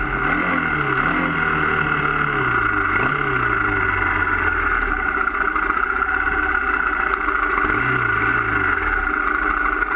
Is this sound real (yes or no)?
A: yes